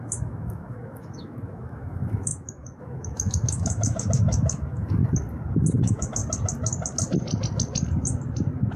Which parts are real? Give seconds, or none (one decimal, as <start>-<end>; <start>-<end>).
5.0-5.8; 6.2-8.8